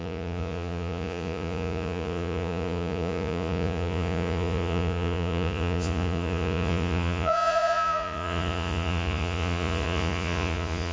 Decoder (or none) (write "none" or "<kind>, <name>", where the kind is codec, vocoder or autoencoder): vocoder, Vocos